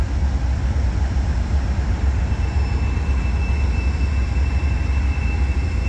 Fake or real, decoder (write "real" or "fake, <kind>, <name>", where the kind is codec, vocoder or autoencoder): real